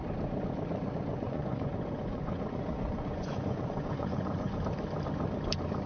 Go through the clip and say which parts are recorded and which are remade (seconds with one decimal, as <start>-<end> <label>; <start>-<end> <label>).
0.0-1.1 recorded; 1.1-4.6 remade; 4.6-5.9 recorded